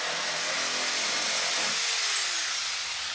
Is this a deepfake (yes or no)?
no